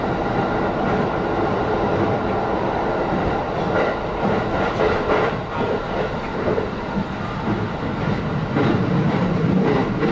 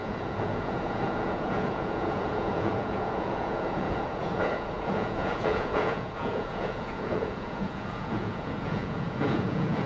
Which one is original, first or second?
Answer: first